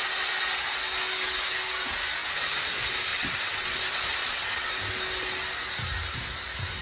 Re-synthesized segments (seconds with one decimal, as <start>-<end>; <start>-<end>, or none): 3.1-3.8; 4.2-4.7